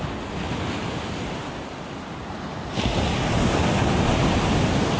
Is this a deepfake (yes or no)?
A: no